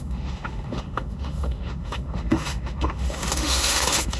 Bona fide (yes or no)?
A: no